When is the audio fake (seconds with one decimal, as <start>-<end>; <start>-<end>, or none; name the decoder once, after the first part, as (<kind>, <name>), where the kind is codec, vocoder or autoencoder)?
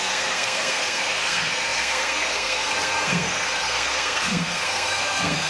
0.0-5.5 (codec, SNAC)